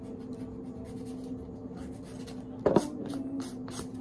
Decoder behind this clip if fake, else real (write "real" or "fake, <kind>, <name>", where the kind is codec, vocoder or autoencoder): real